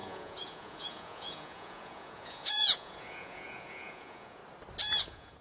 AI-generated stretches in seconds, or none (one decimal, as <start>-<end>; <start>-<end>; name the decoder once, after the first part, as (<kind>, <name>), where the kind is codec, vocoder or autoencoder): 0.0-4.4 (vocoder, Vocos); 5.0-5.4